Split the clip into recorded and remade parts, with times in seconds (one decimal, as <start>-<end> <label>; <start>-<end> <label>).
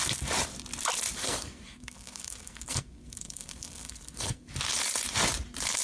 0.0-1.2 recorded; 1.2-4.5 remade; 4.5-5.8 recorded